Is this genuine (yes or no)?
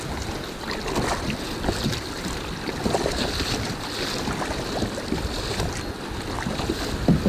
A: yes